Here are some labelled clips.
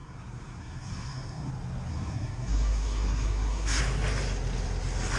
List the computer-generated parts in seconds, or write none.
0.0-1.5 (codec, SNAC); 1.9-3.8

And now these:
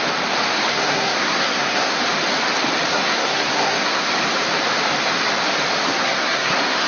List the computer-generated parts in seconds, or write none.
0.7-2.0 (codec, SNAC); 2.9-4.1; 5.9-6.9

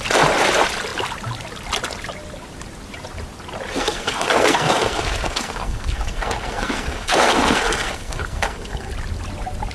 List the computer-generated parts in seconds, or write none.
3.7-8.9 (codec, SNAC)

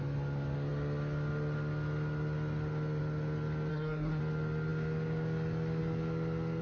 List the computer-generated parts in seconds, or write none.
3.7-4.2 (codec, SNAC)

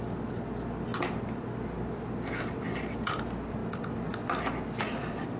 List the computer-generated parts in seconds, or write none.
none

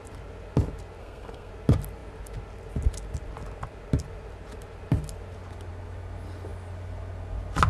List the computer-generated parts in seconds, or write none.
1.0-1.5 (codec, SNAC)

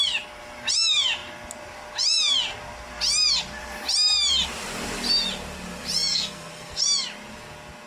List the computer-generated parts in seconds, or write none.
6.1-6.8 (codec, SNAC)